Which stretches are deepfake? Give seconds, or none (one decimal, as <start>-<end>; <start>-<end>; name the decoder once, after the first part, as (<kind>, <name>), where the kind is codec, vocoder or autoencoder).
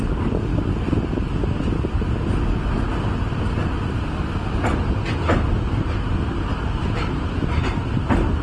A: none